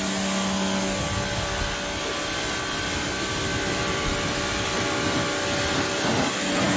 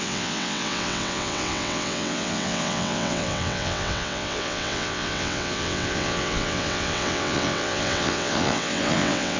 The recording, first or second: first